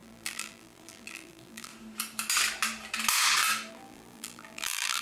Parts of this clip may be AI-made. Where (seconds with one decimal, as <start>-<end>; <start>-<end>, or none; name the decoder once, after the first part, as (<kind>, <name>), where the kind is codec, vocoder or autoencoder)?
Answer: 0.0-1.7 (vocoder, BigVGAN v2); 3.7-5.0